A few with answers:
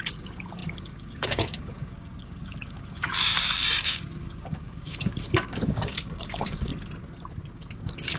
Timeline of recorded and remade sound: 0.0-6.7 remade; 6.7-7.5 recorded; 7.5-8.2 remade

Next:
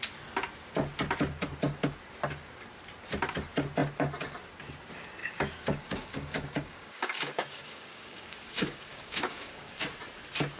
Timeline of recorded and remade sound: 0.0-5.2 recorded; 5.2-9.9 remade; 9.9-10.6 recorded

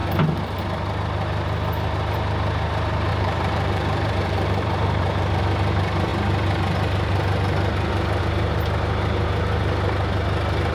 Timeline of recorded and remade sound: 0.0-3.1 recorded; 3.1-5.4 remade; 5.4-10.7 recorded

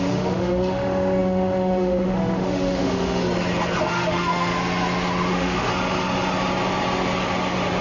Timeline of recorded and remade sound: 0.0-3.2 remade; 3.2-3.8 recorded; 3.8-4.5 remade; 4.5-5.3 recorded; 5.3-5.7 remade; 5.7-7.8 recorded

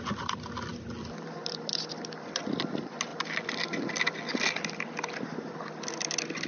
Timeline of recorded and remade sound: 0.0-6.5 recorded